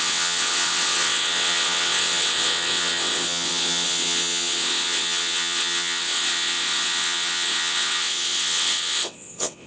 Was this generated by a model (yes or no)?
yes